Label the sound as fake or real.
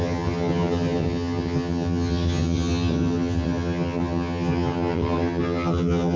fake